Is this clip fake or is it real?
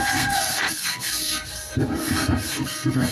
fake